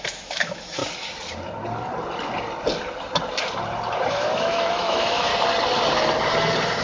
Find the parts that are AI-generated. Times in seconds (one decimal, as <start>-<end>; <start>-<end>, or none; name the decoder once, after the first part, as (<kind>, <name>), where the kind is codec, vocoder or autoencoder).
0.0-0.8 (autoencoder, DAC-VAE); 4.1-5.3